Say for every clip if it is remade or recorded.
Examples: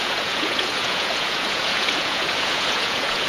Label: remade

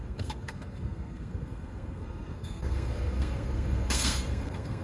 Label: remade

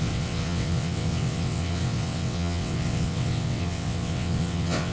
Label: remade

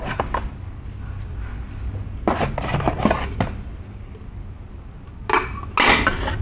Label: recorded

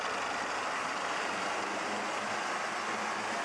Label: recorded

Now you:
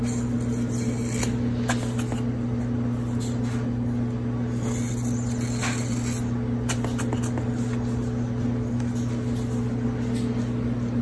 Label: recorded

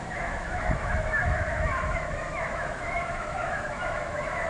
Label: remade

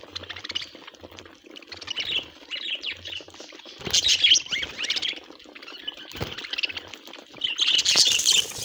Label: recorded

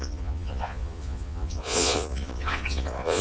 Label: remade